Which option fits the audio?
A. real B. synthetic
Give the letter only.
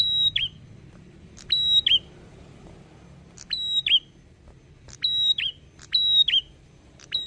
A